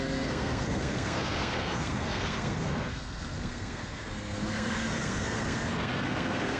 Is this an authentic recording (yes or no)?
no